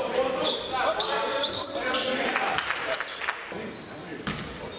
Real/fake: real